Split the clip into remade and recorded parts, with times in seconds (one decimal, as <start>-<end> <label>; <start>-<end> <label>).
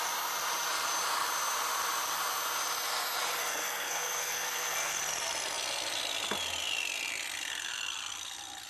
0.0-3.4 recorded; 3.4-5.0 remade; 5.0-8.7 recorded